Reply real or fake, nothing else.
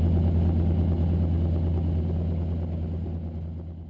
real